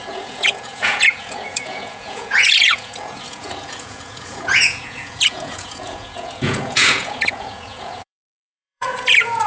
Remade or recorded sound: remade